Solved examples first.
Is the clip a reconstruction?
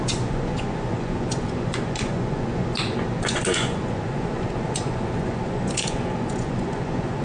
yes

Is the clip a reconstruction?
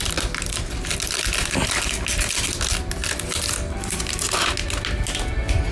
no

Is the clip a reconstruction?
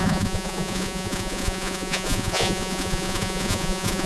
yes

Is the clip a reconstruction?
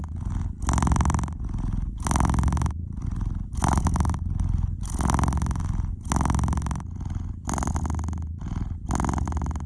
no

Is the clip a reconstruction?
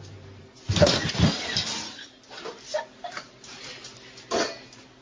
no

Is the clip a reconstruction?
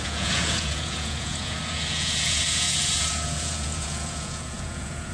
yes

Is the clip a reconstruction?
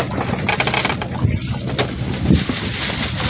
no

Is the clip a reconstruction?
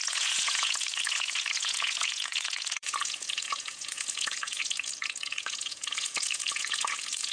yes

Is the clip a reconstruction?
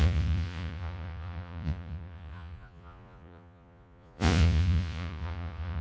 yes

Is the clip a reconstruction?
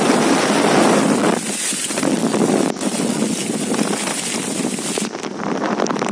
no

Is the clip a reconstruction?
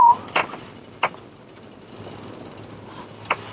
no